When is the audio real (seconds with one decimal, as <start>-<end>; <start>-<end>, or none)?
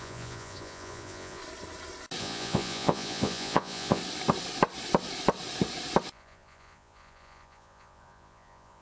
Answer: 1.4-2.2; 4.0-6.1